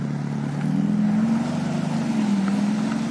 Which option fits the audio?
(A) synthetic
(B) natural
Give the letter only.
B